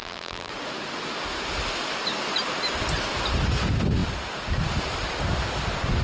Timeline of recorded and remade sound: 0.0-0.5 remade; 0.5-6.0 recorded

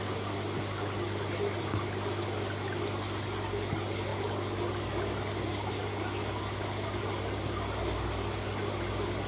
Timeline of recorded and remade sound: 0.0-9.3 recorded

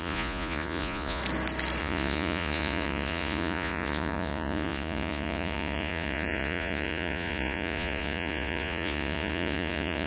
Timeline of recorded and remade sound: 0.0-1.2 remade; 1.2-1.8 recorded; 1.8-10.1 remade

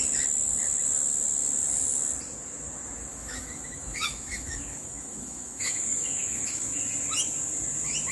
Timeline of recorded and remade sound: 0.0-3.1 recorded; 3.1-6.8 remade; 6.8-8.1 recorded